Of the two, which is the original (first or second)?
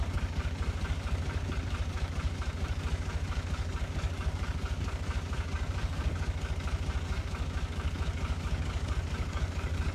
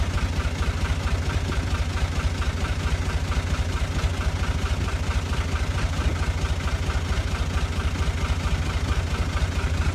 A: second